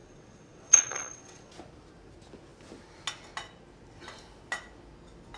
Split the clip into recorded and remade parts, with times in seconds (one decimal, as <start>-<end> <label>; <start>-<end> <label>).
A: 0.0-1.5 remade; 1.5-5.4 recorded